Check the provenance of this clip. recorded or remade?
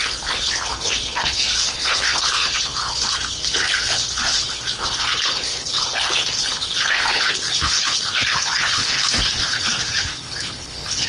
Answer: remade